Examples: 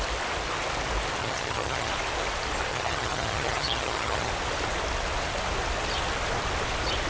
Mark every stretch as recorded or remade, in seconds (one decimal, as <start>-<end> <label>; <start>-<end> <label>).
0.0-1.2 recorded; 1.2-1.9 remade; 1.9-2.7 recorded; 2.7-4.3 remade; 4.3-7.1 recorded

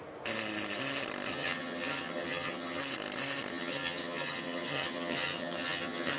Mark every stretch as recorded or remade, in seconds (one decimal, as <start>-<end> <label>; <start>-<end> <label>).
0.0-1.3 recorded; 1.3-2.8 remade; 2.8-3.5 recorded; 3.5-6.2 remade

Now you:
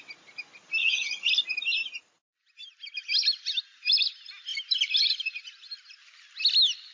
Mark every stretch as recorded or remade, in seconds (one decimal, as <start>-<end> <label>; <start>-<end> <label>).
0.0-0.8 recorded; 0.8-1.3 remade; 1.3-6.9 recorded

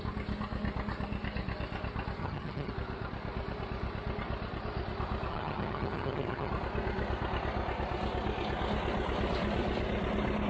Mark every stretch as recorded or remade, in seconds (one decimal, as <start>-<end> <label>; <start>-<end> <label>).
0.0-2.2 recorded; 2.2-2.7 remade; 2.7-5.3 recorded; 5.3-6.5 remade; 6.5-10.5 recorded

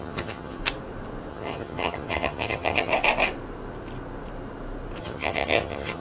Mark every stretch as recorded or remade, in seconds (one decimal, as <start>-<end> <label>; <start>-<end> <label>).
0.0-0.6 remade; 0.6-1.3 recorded; 1.3-2.9 remade; 2.9-5.0 recorded; 5.0-6.0 remade

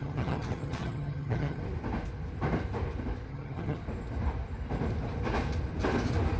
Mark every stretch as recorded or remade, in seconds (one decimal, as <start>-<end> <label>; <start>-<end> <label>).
0.0-1.6 remade; 1.6-3.3 recorded; 3.3-3.8 remade; 3.8-6.4 recorded

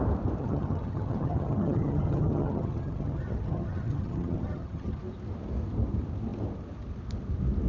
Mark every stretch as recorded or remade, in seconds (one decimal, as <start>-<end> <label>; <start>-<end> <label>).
0.0-0.4 recorded; 0.4-5.0 remade; 5.0-7.7 recorded